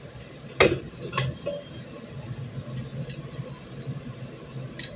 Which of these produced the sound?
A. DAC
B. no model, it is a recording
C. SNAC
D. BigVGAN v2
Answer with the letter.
B